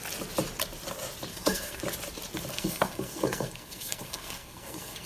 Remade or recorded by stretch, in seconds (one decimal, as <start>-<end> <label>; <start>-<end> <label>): 0.0-1.3 recorded; 1.3-1.8 remade; 1.8-2.5 recorded; 2.5-5.1 remade